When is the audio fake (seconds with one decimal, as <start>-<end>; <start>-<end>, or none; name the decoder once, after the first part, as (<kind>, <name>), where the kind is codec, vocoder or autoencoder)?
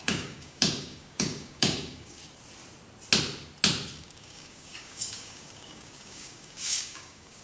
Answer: 0.0-2.2 (codec, DAC); 4.0-7.4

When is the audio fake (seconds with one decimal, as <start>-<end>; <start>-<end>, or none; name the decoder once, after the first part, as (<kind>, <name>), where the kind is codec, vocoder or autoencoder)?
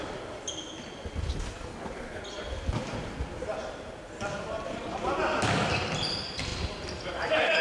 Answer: 1.7-2.2 (codec, HILCodec)